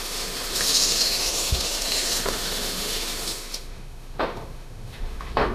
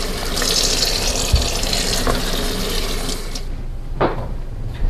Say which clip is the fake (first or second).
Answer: first